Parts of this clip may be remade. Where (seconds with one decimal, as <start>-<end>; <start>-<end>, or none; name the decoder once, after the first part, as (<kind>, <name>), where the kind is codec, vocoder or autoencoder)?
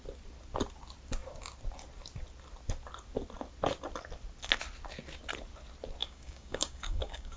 6.0-7.4 (codec, DAC)